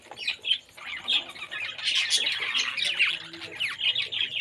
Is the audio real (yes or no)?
yes